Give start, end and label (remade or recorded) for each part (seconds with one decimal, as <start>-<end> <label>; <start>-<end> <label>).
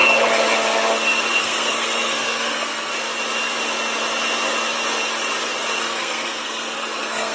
0.0-1.4 recorded; 1.4-2.9 remade; 2.9-5.8 recorded; 5.8-7.3 remade